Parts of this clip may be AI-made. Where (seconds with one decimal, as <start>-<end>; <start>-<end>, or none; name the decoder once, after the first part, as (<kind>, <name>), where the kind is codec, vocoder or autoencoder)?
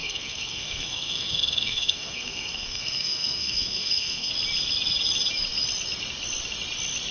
0.0-4.3 (codec, SNAC)